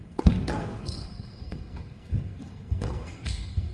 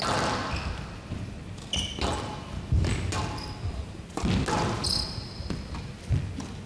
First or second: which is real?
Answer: second